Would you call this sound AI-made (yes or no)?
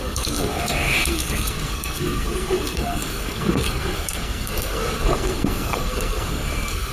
yes